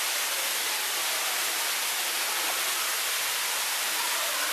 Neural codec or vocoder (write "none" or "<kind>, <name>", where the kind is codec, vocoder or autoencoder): none